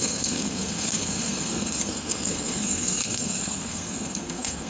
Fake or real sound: fake